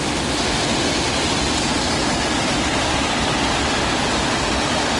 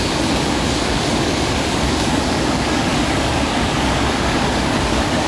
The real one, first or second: first